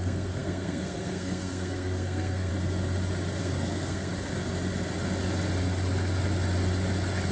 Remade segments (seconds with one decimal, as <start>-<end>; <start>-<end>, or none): 0.0-2.5; 3.4-4.1